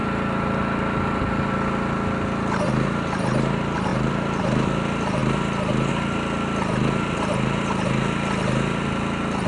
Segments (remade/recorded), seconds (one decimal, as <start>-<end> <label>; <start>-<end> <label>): 0.0-9.5 recorded